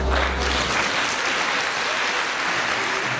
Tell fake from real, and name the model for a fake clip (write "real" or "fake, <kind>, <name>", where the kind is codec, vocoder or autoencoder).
real